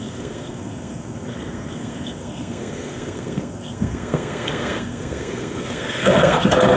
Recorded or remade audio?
remade